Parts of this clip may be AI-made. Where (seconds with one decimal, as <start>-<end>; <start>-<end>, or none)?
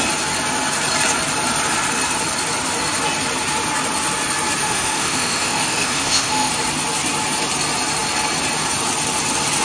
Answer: 4.6-6.5